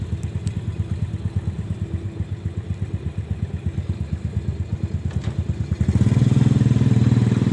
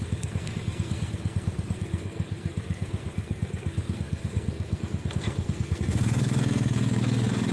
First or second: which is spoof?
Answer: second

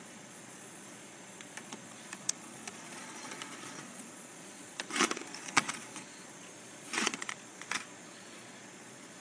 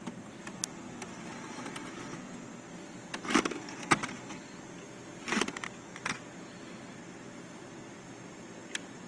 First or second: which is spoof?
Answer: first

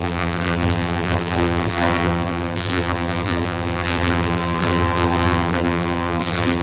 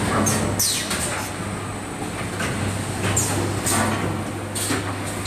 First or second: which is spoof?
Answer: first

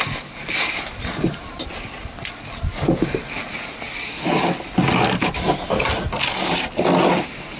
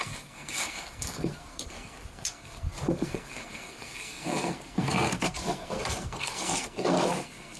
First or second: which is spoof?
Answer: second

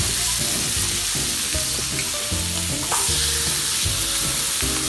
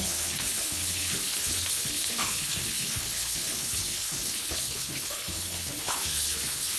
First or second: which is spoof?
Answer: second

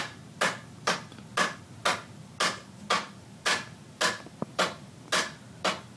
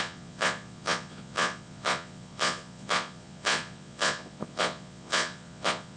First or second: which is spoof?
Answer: second